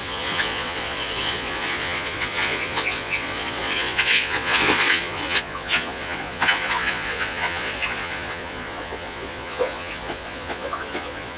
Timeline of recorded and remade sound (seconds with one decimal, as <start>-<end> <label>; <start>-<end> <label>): 0.0-11.4 remade

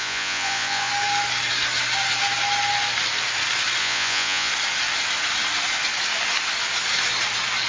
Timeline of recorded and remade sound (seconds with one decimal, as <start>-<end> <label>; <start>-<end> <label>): 0.0-0.9 remade; 0.9-3.8 recorded; 3.8-4.5 remade; 4.5-7.7 recorded